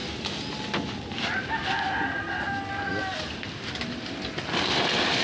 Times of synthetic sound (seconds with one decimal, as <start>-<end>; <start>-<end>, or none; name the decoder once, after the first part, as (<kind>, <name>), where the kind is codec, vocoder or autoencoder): none